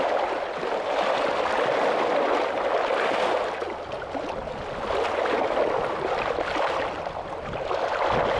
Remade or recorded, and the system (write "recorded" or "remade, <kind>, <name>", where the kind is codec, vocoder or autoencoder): recorded